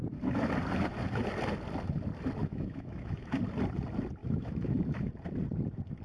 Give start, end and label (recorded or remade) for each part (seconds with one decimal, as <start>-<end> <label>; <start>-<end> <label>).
0.0-2.4 recorded; 2.4-3.4 remade; 3.4-4.2 recorded; 4.2-5.1 remade; 5.1-6.0 recorded